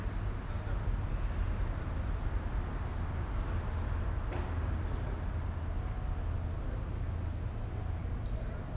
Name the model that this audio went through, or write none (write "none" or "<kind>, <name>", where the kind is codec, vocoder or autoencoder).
none